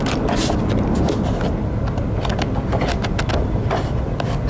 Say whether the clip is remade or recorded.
recorded